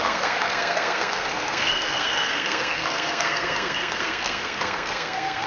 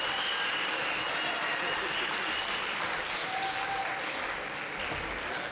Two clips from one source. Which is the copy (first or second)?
first